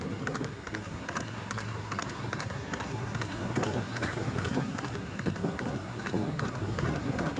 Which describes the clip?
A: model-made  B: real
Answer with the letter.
A